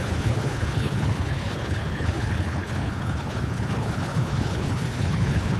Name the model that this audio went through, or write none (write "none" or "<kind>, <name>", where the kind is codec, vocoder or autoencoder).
codec, HILCodec